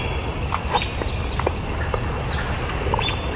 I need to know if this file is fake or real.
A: real